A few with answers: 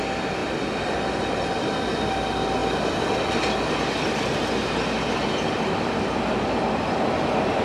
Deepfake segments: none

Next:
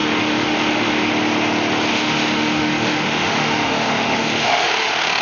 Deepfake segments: 0.0-1.1 (autoencoder, DAC-VAE); 1.9-5.2

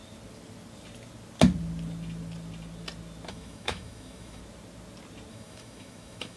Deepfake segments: 3.3-4.4 (autoencoder, DAC-VAE); 5.3-6.4

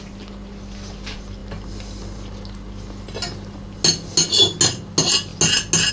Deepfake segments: none

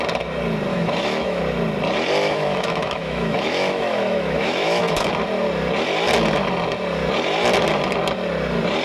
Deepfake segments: 0.7-1.4 (autoencoder, DAC-VAE); 2.2-5.1

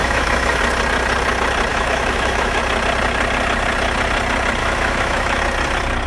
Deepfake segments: 0.0-0.6 (autoencoder, DAC-VAE); 1.7-2.6; 4.6-5.4

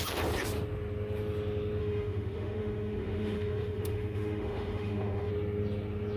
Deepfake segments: 1.8-5.3 (autoencoder, DAC-VAE)

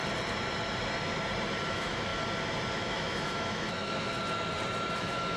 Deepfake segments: 1.7-2.1 (autoencoder, DAC-VAE); 2.7-4.1; 5.0-5.4